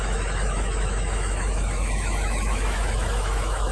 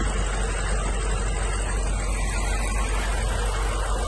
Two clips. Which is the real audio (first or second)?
second